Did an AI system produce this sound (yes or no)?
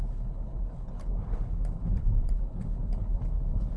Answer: yes